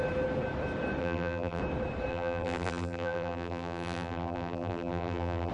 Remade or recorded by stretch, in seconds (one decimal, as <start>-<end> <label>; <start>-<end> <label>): 0.0-1.0 recorded; 1.0-1.6 remade; 1.6-2.1 recorded; 2.1-5.5 remade